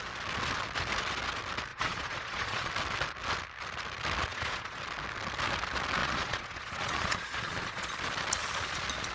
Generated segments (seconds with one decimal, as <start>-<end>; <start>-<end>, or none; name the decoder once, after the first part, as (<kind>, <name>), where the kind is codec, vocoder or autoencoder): 1.7-2.7 (vocoder, Vocos); 4.3-4.8; 6.0-7.9